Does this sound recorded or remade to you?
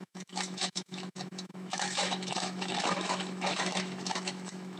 remade